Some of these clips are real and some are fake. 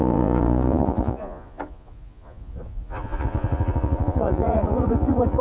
fake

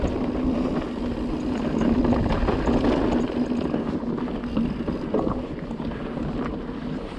real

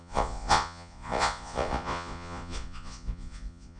fake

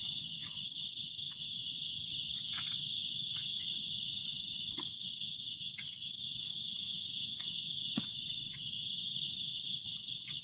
fake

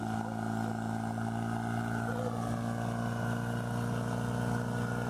real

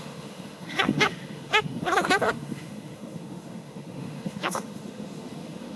fake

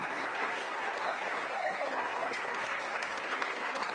fake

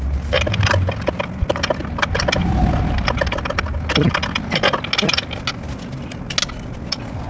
real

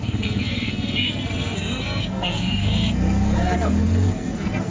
fake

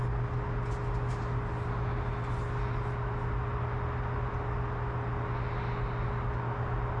real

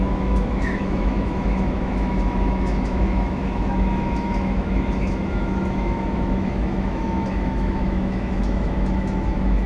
fake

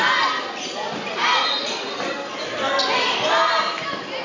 real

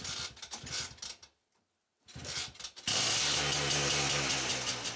real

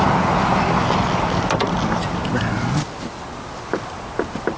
real